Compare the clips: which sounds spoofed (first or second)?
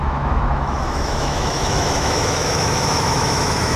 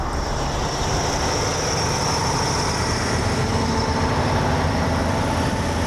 first